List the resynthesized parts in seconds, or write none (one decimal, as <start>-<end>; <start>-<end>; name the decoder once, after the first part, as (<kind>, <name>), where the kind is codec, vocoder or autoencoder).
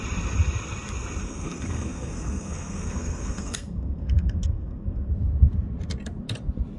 1.2-5.1 (codec, SNAC)